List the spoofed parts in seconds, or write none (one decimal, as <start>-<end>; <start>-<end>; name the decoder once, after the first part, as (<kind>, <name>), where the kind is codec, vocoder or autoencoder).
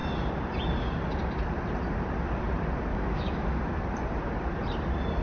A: 2.9-3.6 (autoencoder, DAC-VAE)